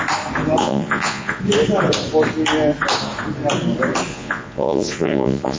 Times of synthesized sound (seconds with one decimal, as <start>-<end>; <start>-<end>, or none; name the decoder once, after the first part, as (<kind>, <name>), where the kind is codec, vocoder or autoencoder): 0.6-1.4 (vocoder, Vocos); 4.1-5.6